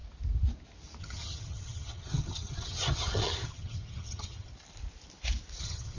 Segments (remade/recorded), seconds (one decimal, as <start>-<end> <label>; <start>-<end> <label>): 0.0-1.0 recorded; 1.0-4.5 remade; 4.5-5.6 recorded; 5.6-6.0 remade